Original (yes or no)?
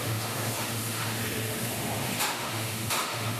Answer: no